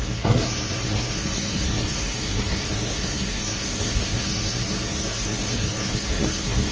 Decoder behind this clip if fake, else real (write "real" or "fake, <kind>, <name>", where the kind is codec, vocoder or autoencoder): fake, codec, SNAC